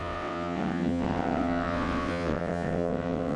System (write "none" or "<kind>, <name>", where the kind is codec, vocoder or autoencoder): vocoder, WaveNeXt